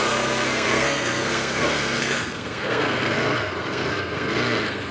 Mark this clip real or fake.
fake